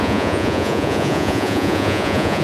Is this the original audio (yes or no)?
no